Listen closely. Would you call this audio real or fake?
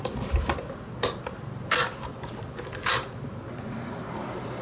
real